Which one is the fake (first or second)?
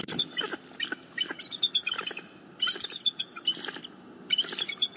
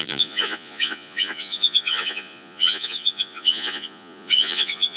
second